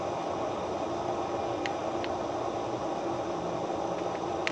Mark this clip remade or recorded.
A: recorded